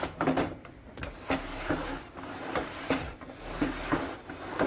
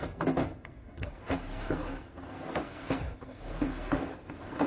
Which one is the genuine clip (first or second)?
first